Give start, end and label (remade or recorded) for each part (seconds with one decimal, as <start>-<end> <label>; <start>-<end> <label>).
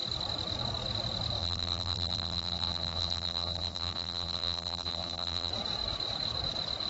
0.0-1.4 recorded; 1.4-5.5 remade; 5.5-6.9 recorded